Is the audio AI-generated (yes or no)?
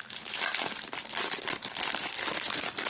yes